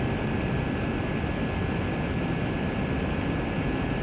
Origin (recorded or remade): recorded